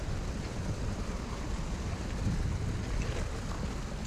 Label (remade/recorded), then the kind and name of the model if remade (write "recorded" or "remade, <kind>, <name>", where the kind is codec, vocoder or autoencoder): recorded